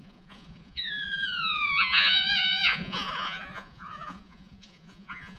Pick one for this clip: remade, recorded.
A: remade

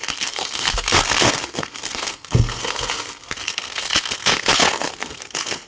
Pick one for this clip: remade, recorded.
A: remade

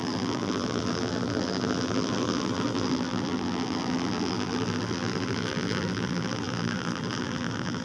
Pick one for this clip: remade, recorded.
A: remade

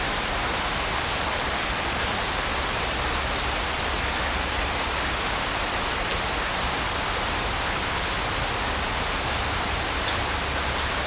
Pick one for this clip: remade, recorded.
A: recorded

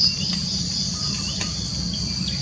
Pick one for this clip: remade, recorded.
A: recorded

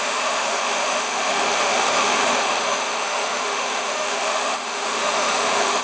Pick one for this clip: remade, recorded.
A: remade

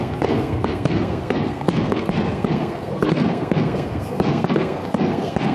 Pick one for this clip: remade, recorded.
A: remade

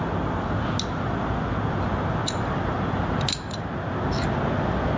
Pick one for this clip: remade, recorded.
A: recorded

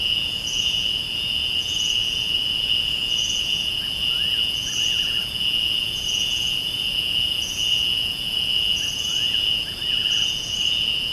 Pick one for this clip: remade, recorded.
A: remade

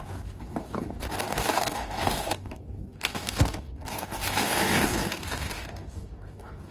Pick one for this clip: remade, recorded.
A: remade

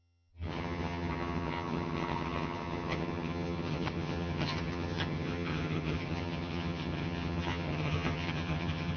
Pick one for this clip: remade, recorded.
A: remade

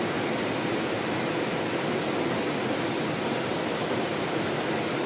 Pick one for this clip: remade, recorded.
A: recorded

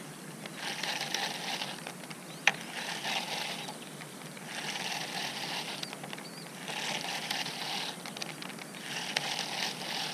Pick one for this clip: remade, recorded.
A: recorded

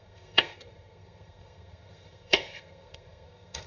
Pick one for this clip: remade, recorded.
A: remade